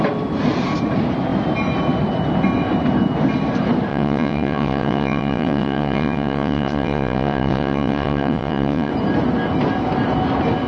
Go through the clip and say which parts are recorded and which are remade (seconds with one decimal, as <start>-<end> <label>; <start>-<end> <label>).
0.0-3.9 recorded; 3.9-8.9 remade; 8.9-10.7 recorded